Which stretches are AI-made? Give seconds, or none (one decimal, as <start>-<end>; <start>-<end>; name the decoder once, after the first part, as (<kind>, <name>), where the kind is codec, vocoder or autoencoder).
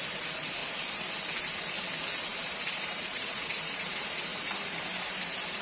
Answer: 0.0-0.6 (vocoder, BigVGAN v2); 2.4-4.3; 4.8-5.6